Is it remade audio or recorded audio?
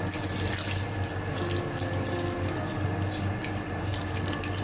recorded